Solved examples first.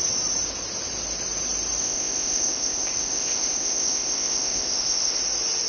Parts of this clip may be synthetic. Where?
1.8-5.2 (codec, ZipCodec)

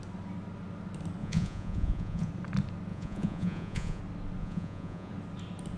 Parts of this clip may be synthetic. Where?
1.2-2.3 (vocoder, Vocos); 2.9-4.0; 4.4-5.1

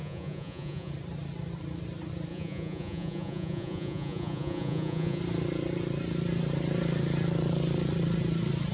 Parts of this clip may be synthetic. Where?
0.0-0.9 (vocoder, Vocos); 2.3-5.2

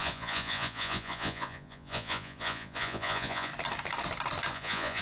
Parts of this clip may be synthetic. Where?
0.0-3.5 (vocoder, Vocos); 4.5-5.0